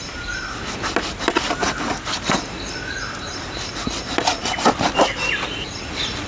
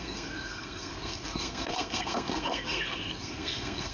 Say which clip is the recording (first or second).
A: first